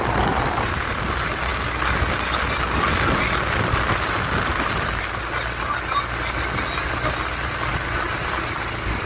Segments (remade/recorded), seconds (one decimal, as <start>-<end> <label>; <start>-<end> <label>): 0.0-9.1 recorded